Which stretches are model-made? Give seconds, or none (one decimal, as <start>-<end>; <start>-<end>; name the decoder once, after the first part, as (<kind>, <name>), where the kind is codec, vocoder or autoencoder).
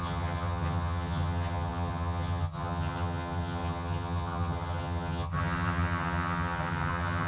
0.0-7.3 (vocoder, HiFi-GAN)